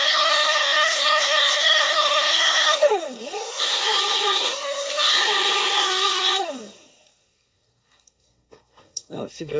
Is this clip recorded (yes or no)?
no